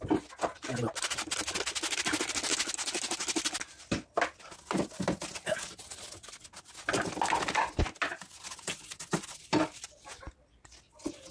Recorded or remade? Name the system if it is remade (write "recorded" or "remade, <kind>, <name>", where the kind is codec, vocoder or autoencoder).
recorded